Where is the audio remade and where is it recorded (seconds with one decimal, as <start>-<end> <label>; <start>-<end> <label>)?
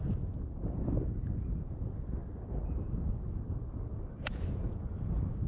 0.0-5.5 recorded